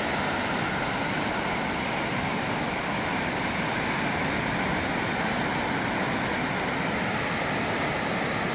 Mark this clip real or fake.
real